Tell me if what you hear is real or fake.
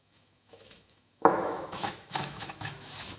fake